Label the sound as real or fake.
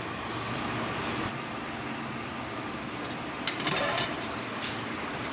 real